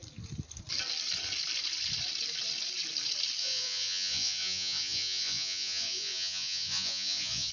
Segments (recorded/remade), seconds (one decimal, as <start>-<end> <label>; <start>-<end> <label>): 0.0-3.4 recorded; 3.4-7.5 remade